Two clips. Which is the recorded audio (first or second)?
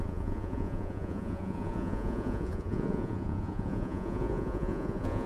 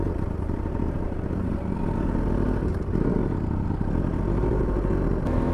second